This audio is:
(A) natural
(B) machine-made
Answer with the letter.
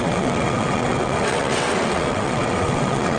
B